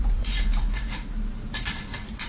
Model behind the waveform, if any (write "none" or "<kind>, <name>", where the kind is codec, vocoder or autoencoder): vocoder, BigVGAN v2